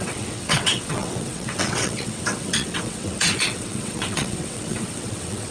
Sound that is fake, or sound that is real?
fake